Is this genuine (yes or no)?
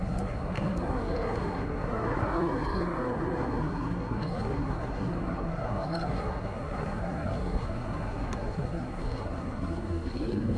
no